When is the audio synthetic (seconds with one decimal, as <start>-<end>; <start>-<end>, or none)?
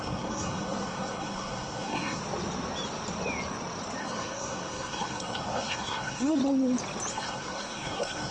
0.0-2.2; 4.0-6.4; 7.1-8.3